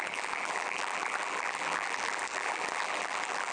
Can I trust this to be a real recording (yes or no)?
no